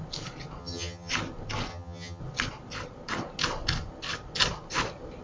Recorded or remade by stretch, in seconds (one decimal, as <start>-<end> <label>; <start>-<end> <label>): 0.0-0.6 recorded; 0.6-1.1 remade; 1.1-1.7 recorded; 1.7-2.2 remade; 2.2-5.2 recorded